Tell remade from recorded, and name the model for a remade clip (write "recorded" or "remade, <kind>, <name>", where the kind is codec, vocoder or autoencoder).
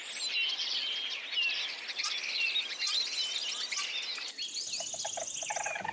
recorded